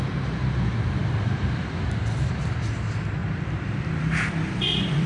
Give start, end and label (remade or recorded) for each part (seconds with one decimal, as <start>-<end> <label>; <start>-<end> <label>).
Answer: 0.0-1.0 recorded; 1.0-1.8 remade; 1.8-3.2 recorded; 3.2-5.1 remade

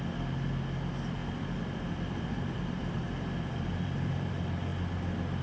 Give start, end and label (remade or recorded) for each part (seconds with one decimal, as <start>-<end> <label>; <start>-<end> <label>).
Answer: 0.0-1.2 recorded; 1.2-4.3 remade; 4.3-5.4 recorded

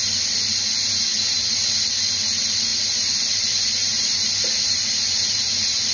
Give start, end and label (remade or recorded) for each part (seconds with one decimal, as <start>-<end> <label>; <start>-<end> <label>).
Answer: 0.0-3.8 recorded; 3.8-5.4 remade; 5.4-5.9 recorded

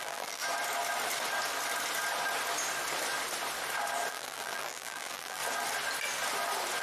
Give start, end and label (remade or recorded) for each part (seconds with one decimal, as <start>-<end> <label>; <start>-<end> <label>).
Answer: 0.0-0.4 remade; 0.4-4.1 recorded; 4.1-5.4 remade; 5.4-6.8 recorded

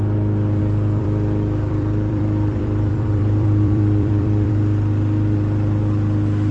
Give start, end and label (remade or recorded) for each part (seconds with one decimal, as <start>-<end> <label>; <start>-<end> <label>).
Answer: 0.0-0.6 recorded; 0.6-4.5 remade; 4.5-6.5 recorded